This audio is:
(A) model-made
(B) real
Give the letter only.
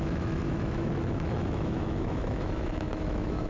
A